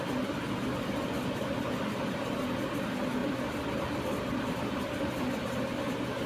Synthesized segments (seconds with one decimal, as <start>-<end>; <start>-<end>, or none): 3.2-4.6